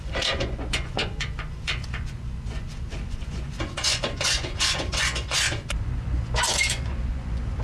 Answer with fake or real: fake